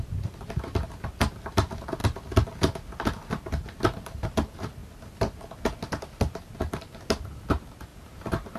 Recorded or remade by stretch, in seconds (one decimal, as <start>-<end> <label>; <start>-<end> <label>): 0.0-7.9 recorded; 7.9-8.6 remade